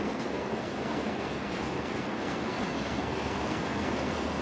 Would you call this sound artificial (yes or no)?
yes